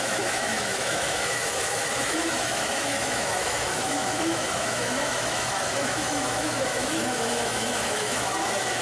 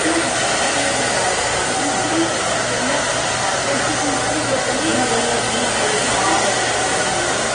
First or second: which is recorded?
second